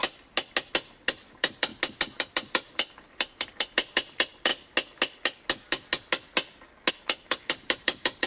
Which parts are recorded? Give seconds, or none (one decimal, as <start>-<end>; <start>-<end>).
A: 0.0-1.1; 1.7-2.3; 4.5-6.9